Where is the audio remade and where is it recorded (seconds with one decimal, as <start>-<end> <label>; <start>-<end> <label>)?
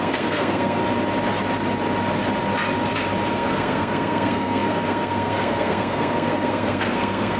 0.0-0.8 remade; 0.8-3.3 recorded; 3.3-7.4 remade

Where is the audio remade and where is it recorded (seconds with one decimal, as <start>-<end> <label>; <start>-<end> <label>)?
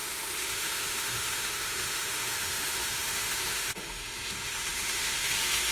0.0-5.7 remade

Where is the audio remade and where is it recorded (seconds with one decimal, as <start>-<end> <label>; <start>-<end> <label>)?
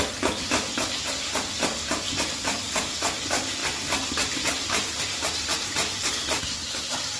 0.0-7.2 recorded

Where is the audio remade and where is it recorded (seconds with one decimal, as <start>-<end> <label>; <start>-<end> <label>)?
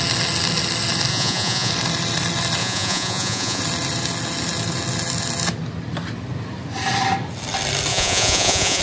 0.0-1.1 recorded; 1.1-1.7 remade; 1.7-2.6 recorded; 2.6-3.6 remade; 3.6-7.9 recorded; 7.9-8.8 remade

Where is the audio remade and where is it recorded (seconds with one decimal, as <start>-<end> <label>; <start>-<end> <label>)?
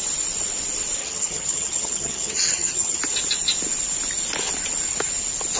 0.0-1.0 recorded; 1.0-3.0 remade; 3.0-5.6 recorded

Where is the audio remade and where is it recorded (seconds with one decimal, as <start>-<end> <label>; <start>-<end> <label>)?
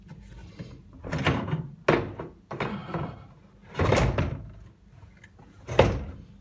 0.0-6.4 recorded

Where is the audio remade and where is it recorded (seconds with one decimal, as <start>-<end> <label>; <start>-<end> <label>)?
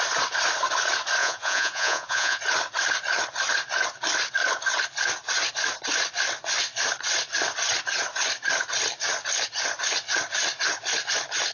0.0-1.2 recorded; 1.2-2.4 remade; 2.4-11.5 recorded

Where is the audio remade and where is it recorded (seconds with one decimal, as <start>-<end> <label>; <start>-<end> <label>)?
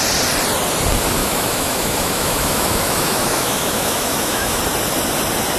0.0-1.2 recorded; 1.2-4.6 remade; 4.6-5.6 recorded